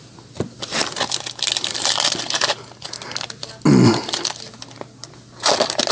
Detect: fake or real real